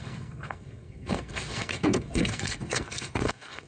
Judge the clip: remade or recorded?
remade